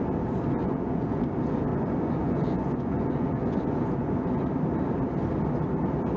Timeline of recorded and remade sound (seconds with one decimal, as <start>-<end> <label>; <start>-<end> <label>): 0.0-0.6 recorded; 0.6-1.2 remade; 1.2-1.7 recorded; 1.7-4.4 remade; 4.4-6.2 recorded